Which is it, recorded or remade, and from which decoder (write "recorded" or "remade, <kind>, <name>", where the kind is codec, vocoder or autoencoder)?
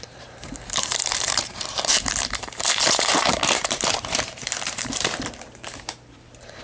remade, vocoder, BigVGAN v2